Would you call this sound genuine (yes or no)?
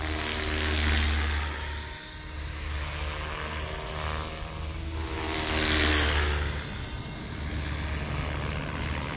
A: yes